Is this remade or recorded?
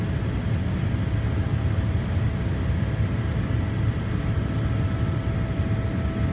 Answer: recorded